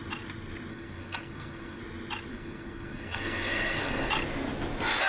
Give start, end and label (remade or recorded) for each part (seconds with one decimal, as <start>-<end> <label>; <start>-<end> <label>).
0.0-0.7 recorded; 0.7-1.8 remade; 1.8-2.3 recorded; 2.3-4.1 remade; 4.1-5.1 recorded